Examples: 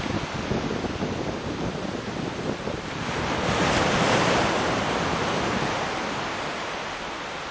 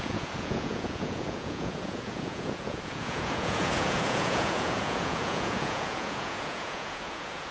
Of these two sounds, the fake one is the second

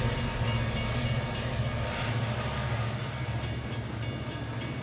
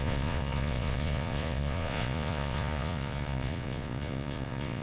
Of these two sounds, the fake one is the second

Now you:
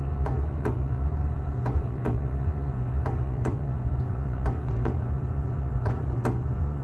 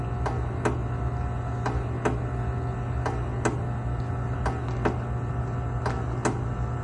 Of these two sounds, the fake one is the first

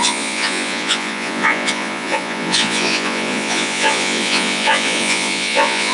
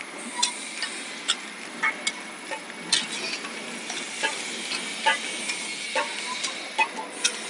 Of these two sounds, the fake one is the first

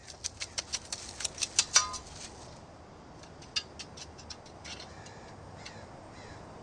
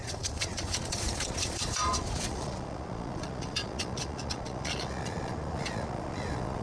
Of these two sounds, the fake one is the second